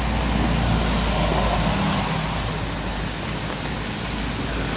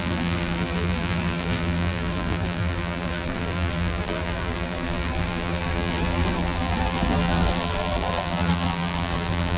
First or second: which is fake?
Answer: second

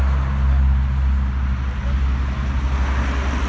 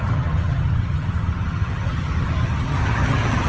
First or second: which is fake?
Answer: second